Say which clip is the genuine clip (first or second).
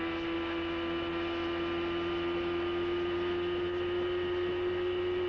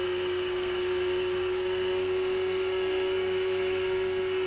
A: first